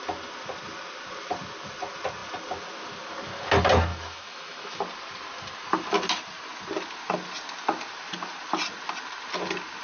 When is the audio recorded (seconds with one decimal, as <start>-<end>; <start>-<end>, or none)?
0.0-3.9; 4.8-9.8